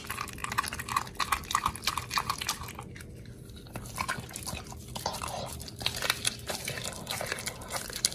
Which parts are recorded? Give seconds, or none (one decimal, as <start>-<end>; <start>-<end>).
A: 0.0-8.1